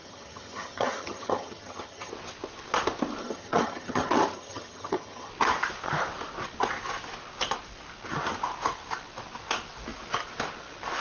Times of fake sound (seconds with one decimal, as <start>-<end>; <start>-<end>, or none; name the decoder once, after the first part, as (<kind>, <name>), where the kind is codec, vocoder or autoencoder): 0.0-2.1 (vocoder, HiFi-GAN); 3.2-5.3